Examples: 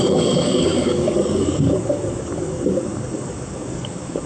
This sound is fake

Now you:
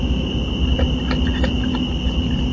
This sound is real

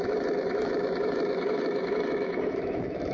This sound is fake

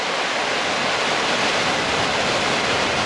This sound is real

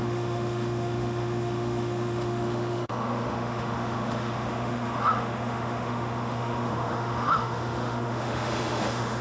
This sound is fake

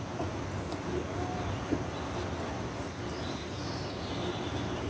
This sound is real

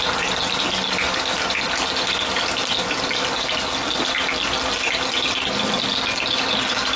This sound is real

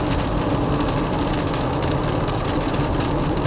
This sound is real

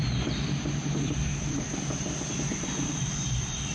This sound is real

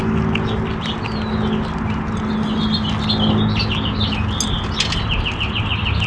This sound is real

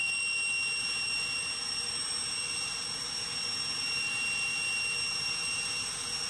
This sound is real